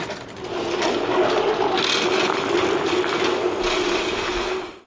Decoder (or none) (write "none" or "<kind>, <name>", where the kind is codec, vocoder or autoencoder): none